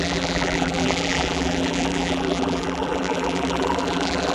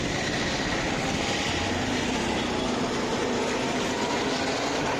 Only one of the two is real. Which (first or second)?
second